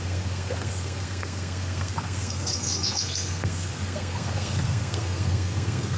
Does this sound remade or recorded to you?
remade